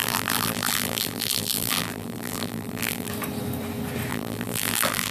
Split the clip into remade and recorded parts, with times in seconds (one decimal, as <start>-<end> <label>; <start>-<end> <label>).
0.0-3.1 remade; 3.1-4.1 recorded; 4.1-5.1 remade